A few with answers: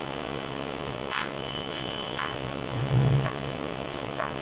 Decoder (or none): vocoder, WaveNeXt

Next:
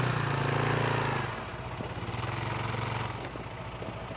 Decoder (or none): none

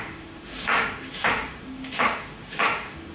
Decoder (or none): autoencoder, DAC-VAE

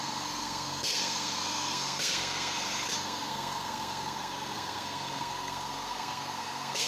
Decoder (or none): codec, SNAC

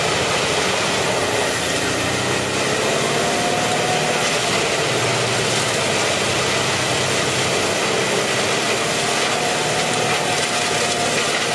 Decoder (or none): none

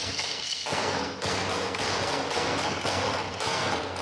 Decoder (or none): codec, SNAC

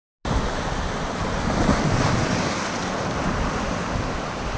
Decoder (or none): none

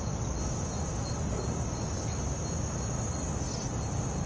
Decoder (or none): none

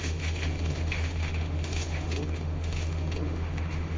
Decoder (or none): autoencoder, DAC-VAE